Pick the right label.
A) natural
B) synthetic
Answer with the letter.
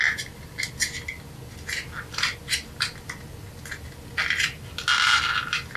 A